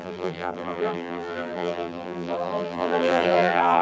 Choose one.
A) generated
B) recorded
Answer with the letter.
A